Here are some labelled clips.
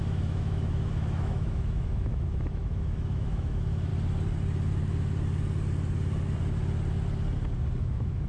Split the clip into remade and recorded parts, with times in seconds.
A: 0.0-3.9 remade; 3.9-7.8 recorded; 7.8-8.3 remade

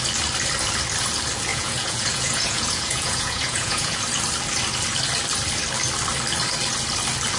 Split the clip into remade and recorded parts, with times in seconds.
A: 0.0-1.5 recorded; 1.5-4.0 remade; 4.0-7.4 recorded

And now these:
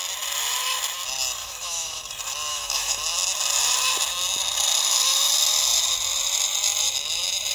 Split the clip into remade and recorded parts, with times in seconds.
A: 0.0-1.4 recorded; 1.4-2.0 remade; 2.0-2.5 recorded; 2.5-3.0 remade; 3.0-7.5 recorded

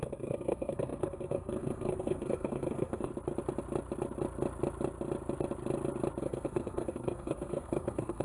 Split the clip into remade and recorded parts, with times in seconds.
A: 0.0-3.1 remade; 3.1-6.2 recorded; 6.2-8.2 remade

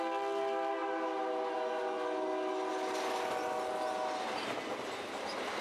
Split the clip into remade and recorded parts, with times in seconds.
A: 0.0-5.6 recorded

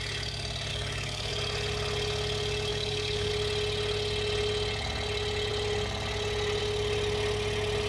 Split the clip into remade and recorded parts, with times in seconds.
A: 0.0-0.7 recorded; 0.7-1.3 remade; 1.3-2.7 recorded; 2.7-3.3 remade; 3.3-7.9 recorded

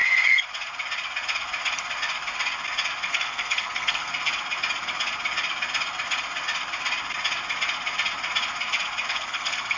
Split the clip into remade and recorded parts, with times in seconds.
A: 0.0-3.1 recorded; 3.1-4.1 remade; 4.1-9.1 recorded; 9.1-9.8 remade